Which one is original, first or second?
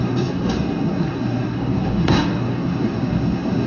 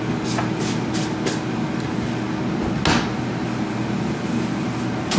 second